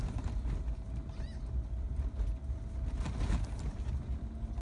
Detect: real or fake real